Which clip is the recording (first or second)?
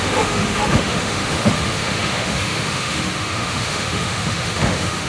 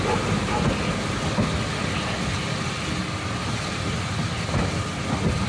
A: second